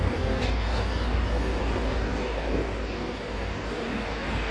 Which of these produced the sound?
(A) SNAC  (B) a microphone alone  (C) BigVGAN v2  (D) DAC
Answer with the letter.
D